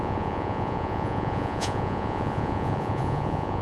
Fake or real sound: fake